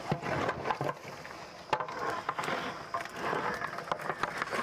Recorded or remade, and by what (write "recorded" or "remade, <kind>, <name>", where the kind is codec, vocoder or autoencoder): recorded